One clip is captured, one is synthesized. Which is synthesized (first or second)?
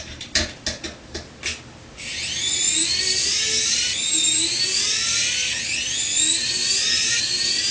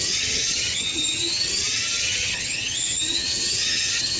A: second